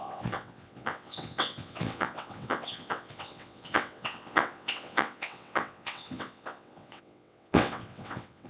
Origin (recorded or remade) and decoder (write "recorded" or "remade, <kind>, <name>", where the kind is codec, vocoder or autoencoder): remade, vocoder, WaveNeXt